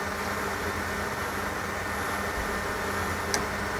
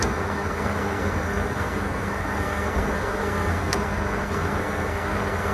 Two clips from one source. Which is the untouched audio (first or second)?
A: first